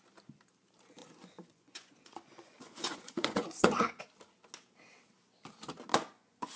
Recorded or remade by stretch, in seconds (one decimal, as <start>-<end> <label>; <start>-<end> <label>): 0.0-1.0 recorded; 1.0-4.0 remade; 4.0-5.9 recorded; 5.9-6.6 remade